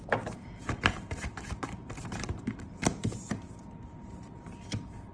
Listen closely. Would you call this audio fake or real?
fake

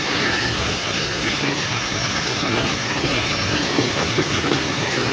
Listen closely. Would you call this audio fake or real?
fake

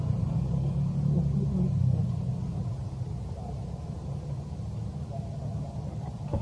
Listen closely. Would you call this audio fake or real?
real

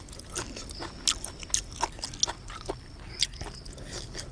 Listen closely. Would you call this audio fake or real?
real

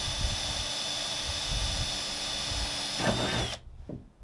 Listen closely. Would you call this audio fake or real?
real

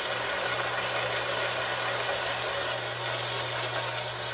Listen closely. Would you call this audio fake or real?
real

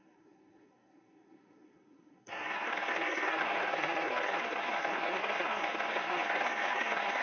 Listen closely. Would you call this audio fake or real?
fake